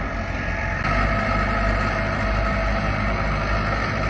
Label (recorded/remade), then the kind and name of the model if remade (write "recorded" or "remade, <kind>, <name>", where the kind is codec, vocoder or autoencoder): recorded